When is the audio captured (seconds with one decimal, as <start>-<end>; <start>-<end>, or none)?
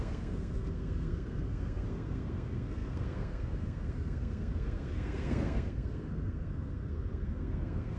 none